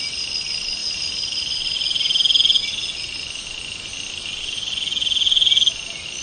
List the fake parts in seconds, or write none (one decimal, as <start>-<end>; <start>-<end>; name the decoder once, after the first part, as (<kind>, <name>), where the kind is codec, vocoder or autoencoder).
none